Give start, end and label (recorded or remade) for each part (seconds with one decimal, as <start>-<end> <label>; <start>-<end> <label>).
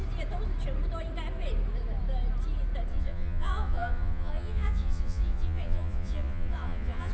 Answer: 0.0-2.9 recorded; 2.9-7.1 remade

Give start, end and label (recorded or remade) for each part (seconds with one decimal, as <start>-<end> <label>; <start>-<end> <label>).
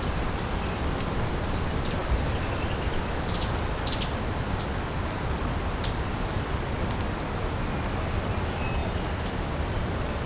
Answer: 0.0-10.3 recorded